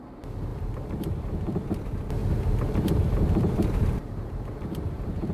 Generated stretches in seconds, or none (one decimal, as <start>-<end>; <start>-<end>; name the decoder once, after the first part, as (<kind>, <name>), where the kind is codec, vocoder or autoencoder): 0.5-1.1 (vocoder, BigVGAN v2); 2.2-5.3